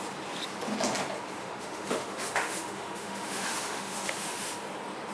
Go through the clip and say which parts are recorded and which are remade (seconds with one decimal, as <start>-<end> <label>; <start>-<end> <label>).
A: 0.0-1.4 recorded; 1.4-4.5 remade; 4.5-5.1 recorded